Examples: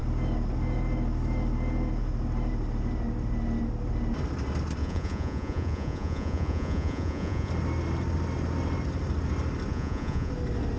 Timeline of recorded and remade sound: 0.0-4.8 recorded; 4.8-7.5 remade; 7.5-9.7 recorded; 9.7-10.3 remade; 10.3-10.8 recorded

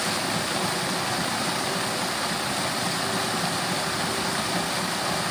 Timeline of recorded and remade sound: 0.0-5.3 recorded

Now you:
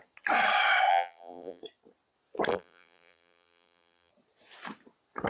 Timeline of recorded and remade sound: 0.0-0.9 recorded; 0.9-1.6 remade; 1.6-2.5 recorded; 2.5-4.1 remade; 4.1-5.3 recorded

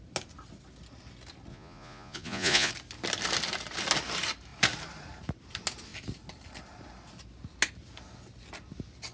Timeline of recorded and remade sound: 0.0-1.5 recorded; 1.5-2.7 remade; 2.7-9.1 recorded

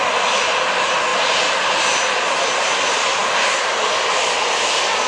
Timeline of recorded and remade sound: 0.0-5.1 recorded

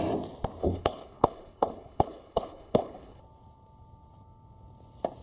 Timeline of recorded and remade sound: 0.0-0.6 recorded; 0.6-3.2 remade; 3.2-5.2 recorded

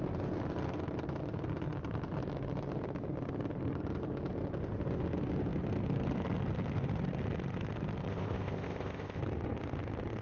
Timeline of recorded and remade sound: 0.0-8.1 recorded; 8.1-9.2 remade; 9.2-10.2 recorded